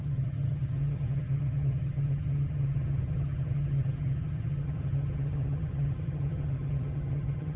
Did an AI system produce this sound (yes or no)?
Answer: yes